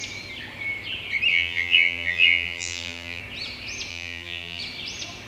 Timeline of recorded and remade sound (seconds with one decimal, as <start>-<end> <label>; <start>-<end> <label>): 0.0-1.3 recorded; 1.3-3.2 remade; 3.2-3.9 recorded; 3.9-4.6 remade; 4.6-5.3 recorded